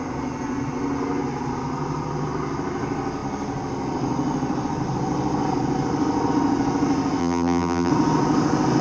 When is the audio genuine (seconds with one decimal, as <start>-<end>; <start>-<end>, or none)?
0.0-7.2; 7.9-8.8